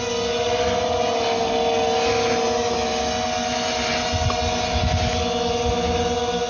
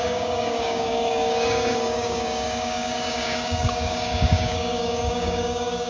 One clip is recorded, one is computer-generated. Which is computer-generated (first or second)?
second